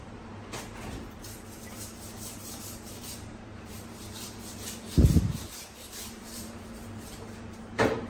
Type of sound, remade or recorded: remade